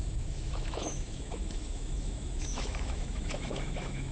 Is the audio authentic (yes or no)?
no